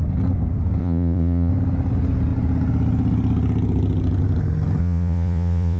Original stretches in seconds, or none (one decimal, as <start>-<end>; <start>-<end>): 0.0-0.8; 1.5-4.8